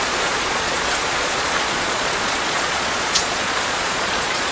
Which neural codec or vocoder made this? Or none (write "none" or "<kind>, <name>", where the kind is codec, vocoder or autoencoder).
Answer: vocoder, Vocos